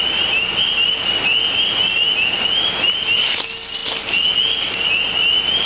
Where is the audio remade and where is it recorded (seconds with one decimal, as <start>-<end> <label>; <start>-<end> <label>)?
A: 0.0-5.7 recorded